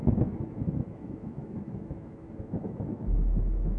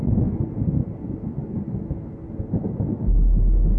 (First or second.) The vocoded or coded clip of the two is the first